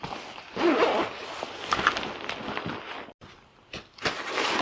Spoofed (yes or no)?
no